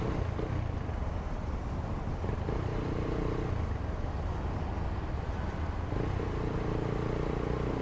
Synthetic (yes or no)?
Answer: no